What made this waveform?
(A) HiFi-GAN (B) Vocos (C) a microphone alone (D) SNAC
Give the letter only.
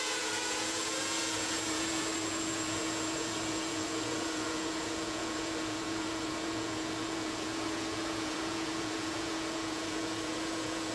B